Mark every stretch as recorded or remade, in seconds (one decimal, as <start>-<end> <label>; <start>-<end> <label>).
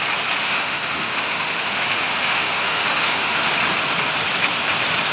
0.0-0.4 recorded; 0.4-3.5 remade; 3.5-5.1 recorded